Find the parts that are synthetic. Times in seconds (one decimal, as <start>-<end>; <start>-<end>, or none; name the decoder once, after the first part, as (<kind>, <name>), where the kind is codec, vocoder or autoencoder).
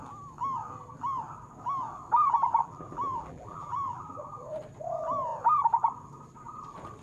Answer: 2.6-4.2 (vocoder, BigVGAN v2)